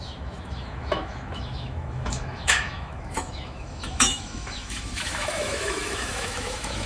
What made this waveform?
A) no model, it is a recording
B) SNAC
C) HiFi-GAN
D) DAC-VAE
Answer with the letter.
D